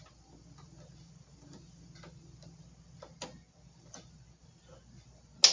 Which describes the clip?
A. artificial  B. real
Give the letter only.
B